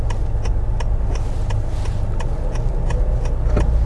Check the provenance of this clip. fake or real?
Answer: real